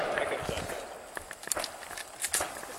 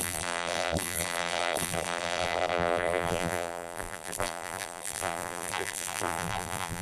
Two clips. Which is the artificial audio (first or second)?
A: second